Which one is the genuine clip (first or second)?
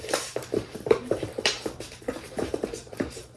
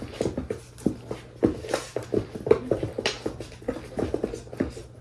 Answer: second